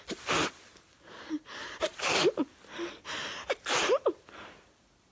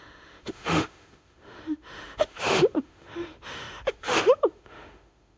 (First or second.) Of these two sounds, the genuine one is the first